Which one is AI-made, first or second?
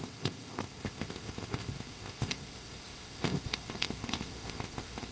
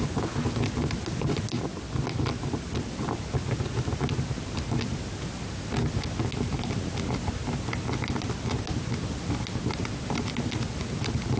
first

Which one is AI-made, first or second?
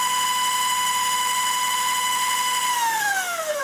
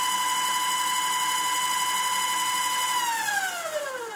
first